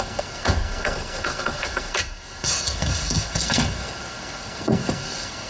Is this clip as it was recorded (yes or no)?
no